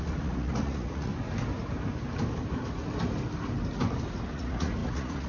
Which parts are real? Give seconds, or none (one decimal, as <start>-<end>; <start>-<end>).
1.1-4.3